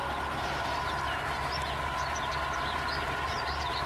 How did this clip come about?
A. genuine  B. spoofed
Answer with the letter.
A